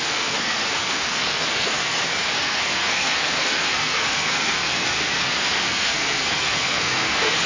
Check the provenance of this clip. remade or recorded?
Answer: remade